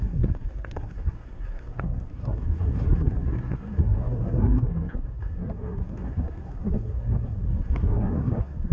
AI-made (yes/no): yes